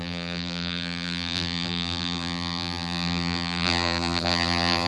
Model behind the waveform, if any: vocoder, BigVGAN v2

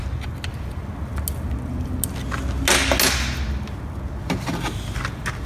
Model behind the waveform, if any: none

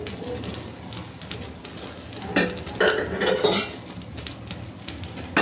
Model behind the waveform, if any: none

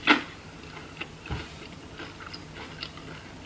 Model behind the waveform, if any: none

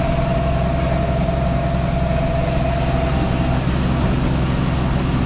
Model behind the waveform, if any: none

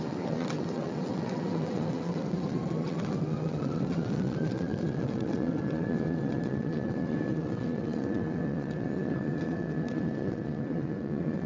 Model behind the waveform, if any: vocoder, WaveNeXt